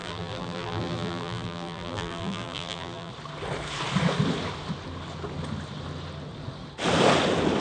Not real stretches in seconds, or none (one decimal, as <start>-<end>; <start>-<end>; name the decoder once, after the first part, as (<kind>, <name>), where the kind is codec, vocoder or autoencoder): 0.0-3.1 (vocoder, BigVGAN v2)